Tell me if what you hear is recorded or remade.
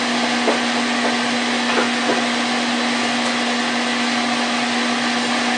recorded